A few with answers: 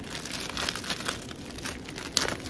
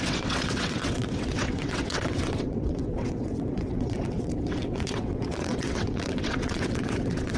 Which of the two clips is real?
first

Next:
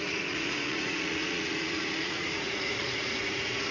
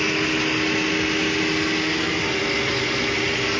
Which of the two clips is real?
second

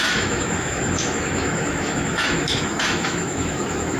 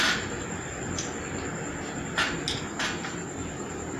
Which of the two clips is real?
second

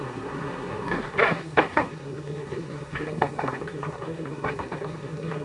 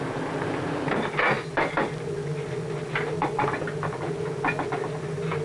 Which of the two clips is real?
second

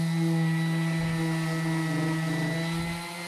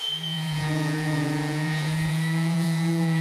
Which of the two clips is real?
first